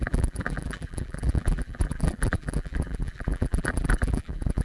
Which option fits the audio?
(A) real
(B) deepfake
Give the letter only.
B